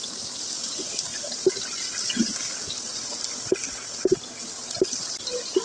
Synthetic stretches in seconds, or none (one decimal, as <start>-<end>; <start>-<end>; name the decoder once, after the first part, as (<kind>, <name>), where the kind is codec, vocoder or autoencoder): none